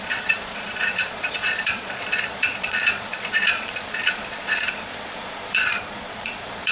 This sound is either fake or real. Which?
fake